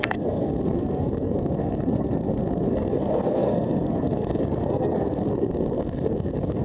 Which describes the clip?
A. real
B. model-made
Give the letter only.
B